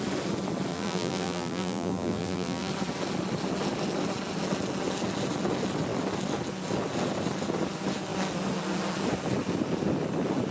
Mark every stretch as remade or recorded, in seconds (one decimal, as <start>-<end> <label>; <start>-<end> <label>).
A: 0.0-0.7 recorded; 0.7-2.7 remade; 2.7-10.5 recorded